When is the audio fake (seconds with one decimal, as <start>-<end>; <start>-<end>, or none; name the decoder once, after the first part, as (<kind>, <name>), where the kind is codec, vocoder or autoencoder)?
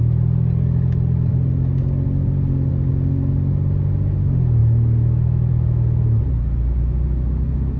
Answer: none